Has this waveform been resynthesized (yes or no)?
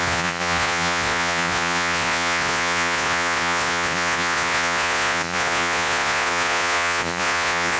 yes